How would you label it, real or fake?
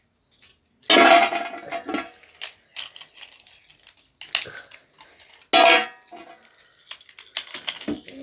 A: real